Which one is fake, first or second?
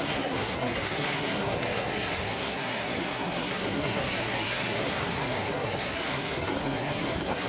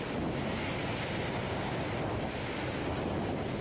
first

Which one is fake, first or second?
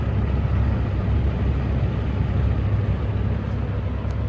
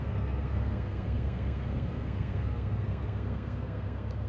second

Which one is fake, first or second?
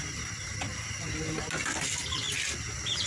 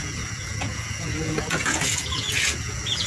second